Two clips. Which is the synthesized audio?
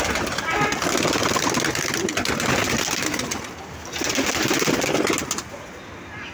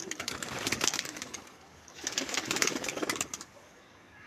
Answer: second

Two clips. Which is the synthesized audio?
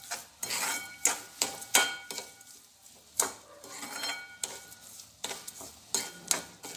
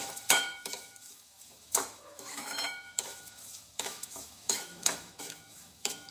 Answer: second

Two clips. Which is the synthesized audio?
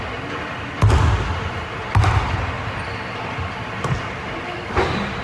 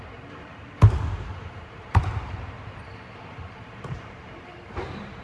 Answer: second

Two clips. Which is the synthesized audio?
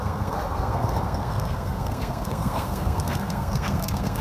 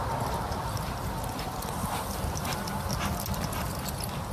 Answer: first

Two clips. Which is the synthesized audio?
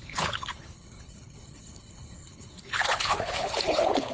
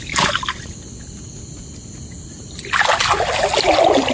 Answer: first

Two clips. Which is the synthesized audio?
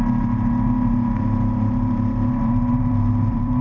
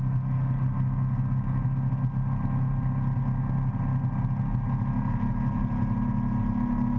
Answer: first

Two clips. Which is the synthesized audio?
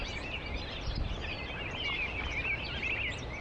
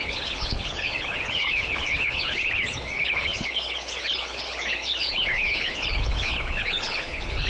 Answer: second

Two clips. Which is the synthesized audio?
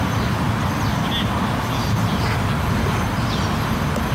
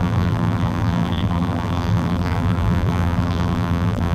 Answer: second